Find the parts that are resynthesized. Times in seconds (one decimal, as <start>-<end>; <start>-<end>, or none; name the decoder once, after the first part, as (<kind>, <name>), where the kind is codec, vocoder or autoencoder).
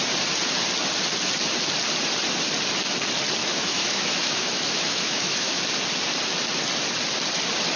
3.4-5.6 (autoencoder, DAC-VAE)